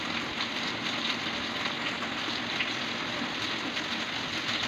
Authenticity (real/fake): real